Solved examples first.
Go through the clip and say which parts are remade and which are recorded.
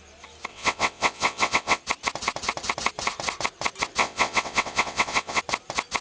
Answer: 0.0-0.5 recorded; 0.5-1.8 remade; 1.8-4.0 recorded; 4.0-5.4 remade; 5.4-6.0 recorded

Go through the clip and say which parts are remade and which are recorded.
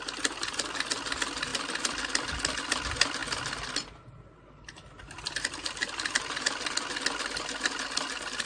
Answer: 0.0-8.5 recorded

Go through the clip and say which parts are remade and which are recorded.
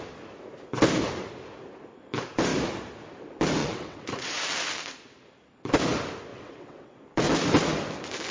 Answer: 0.0-3.6 recorded; 3.6-4.4 remade; 4.4-6.3 recorded; 6.3-7.0 remade; 7.0-8.3 recorded